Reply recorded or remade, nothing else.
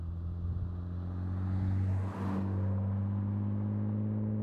recorded